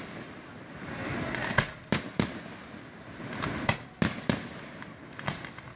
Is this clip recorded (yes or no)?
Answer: yes